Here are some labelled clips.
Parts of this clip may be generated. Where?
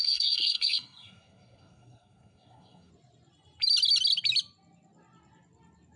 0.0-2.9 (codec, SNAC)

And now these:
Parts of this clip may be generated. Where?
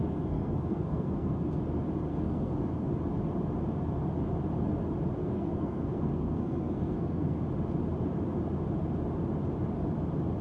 0.0-1.6 (codec, SNAC); 2.1-2.9; 5.2-7.4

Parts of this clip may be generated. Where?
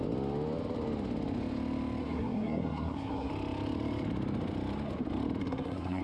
2.0-3.3 (codec, SNAC); 5.4-6.0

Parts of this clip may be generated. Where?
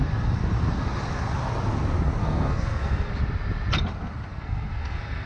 2.2-3.1 (codec, SNAC); 4.3-5.3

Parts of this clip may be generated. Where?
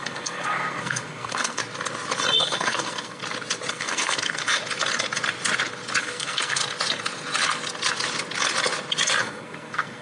0.0-1.6 (codec, SNAC); 2.4-3.2; 3.7-4.6; 6.0-6.6; 9.2-10.0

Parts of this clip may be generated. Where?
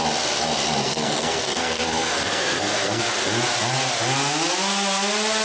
0.8-3.1 (codec, SNAC)